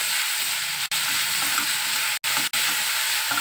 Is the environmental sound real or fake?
real